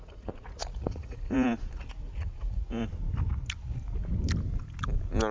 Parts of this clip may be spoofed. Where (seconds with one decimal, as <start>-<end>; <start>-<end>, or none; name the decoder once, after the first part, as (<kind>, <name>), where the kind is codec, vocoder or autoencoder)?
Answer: 0.0-2.9 (vocoder, Vocos)